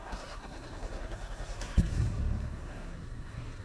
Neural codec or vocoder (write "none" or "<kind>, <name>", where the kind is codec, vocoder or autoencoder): codec, SNAC